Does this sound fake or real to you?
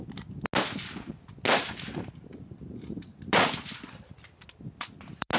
real